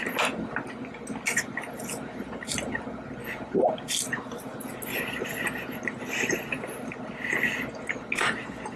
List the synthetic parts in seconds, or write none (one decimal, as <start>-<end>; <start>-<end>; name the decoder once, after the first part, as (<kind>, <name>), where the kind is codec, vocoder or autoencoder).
none